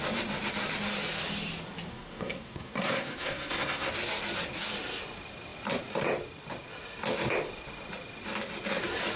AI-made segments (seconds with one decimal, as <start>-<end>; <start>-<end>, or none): 1.9-3.9